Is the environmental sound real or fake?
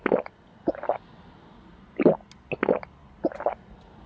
real